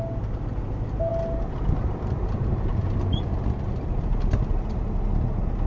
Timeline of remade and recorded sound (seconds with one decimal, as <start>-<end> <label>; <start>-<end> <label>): 0.0-1.1 recorded; 1.1-4.5 remade; 4.5-5.7 recorded